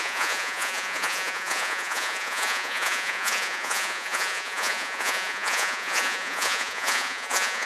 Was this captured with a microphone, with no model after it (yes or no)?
no